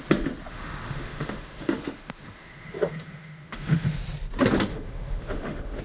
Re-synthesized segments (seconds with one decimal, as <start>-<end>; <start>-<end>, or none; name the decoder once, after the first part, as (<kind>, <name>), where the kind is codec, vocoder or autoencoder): 0.5-4.0 (autoencoder, DAC-VAE); 4.7-5.8